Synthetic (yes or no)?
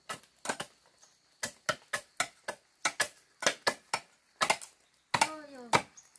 no